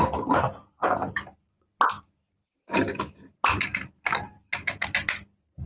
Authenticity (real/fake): real